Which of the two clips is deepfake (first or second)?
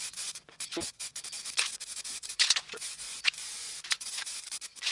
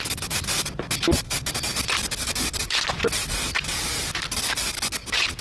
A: first